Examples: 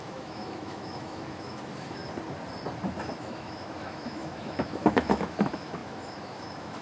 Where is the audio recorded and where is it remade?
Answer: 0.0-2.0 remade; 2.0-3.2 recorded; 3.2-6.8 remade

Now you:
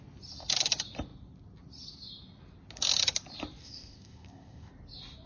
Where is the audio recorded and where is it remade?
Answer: 0.0-3.6 recorded; 3.6-4.7 remade; 4.7-5.3 recorded

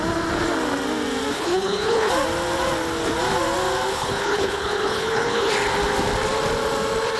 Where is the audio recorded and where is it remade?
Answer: 0.0-1.3 recorded; 1.3-2.1 remade; 2.1-3.9 recorded; 3.9-5.5 remade; 5.5-7.2 recorded

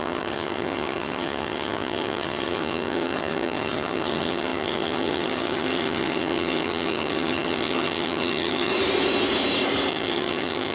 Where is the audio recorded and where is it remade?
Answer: 0.0-8.7 remade; 8.7-9.9 recorded; 9.9-10.7 remade

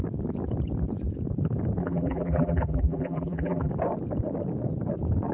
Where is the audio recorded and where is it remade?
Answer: 0.0-1.8 recorded; 1.8-3.7 remade; 3.7-5.3 recorded

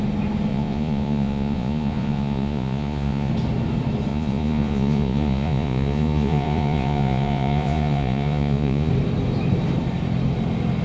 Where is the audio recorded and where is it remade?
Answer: 0.0-0.5 recorded; 0.5-3.3 remade; 3.3-4.1 recorded; 4.1-8.9 remade; 8.9-10.8 recorded